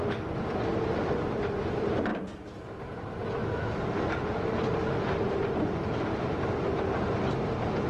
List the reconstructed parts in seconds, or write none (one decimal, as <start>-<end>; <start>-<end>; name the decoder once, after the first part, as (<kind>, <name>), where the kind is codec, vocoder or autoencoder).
none